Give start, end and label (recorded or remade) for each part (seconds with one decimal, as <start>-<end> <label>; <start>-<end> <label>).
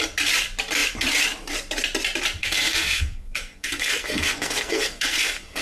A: 0.0-2.4 recorded; 2.4-5.6 remade